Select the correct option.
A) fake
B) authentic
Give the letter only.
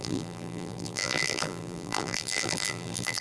A